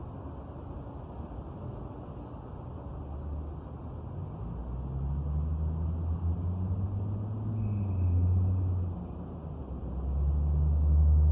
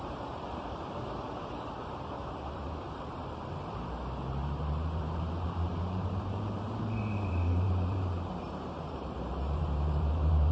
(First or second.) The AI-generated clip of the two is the second